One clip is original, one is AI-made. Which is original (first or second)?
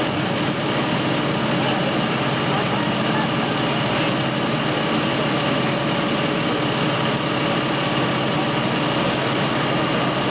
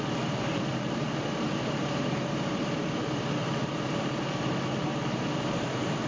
first